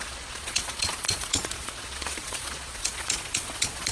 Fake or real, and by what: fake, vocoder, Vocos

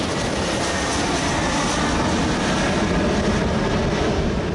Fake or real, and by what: real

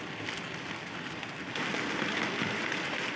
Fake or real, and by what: real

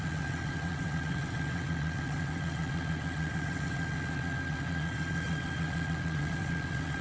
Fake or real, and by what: fake, vocoder, WaveNeXt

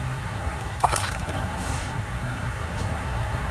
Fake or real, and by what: fake, codec, SNAC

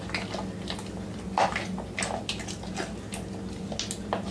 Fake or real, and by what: real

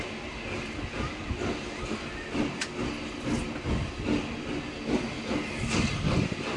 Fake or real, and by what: real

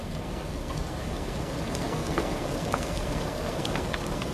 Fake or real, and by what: fake, codec, SNAC